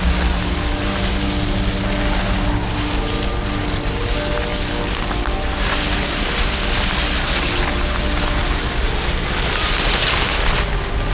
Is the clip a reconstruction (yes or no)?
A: no